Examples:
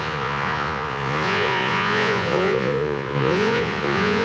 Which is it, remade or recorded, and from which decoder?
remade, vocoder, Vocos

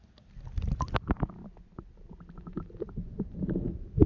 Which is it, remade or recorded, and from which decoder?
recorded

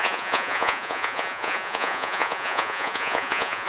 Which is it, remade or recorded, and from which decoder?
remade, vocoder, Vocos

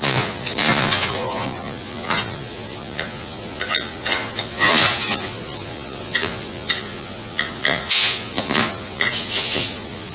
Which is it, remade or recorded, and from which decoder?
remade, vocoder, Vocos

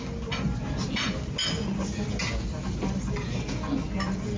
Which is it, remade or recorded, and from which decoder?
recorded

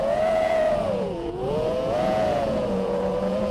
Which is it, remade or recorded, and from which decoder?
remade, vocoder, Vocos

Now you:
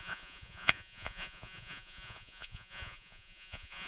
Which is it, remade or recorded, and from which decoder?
remade, vocoder, Vocos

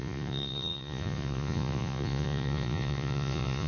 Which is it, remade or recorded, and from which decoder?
remade, vocoder, Vocos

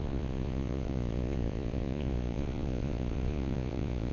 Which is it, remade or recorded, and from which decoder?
remade, vocoder, Vocos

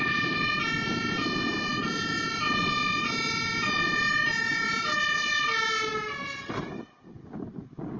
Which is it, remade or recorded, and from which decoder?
recorded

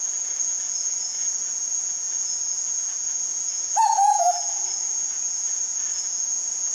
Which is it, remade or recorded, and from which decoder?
remade, vocoder, Vocos